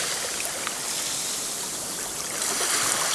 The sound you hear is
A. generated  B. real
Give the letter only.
B